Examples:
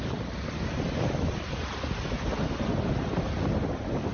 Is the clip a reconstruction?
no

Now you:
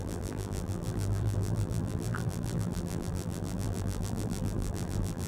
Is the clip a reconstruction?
yes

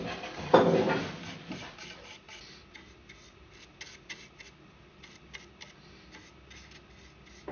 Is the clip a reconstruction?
no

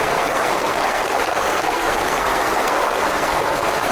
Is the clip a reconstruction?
yes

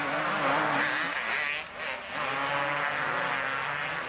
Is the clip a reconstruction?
no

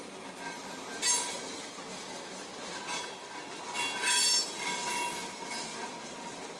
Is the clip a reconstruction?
no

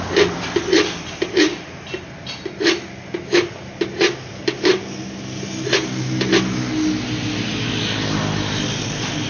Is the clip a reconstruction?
no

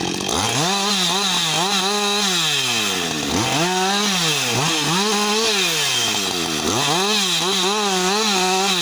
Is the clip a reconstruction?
no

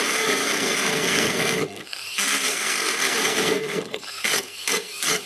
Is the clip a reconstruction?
yes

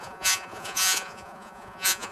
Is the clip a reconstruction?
yes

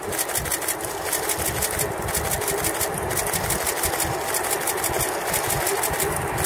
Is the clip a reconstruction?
no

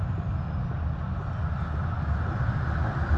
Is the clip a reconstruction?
no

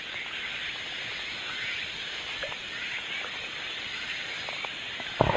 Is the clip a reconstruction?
no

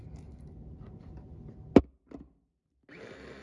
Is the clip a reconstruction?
no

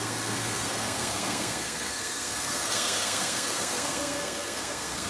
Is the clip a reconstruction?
yes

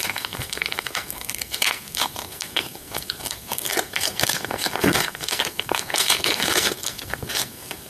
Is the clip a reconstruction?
yes